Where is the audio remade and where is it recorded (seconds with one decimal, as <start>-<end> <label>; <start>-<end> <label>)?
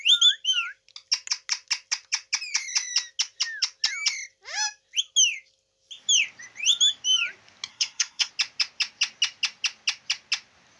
0.0-7.7 recorded; 7.7-8.3 remade; 8.3-10.8 recorded